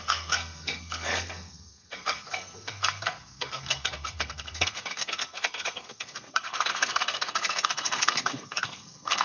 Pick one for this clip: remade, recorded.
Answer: remade